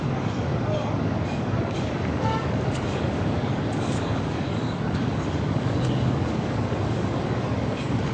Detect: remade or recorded remade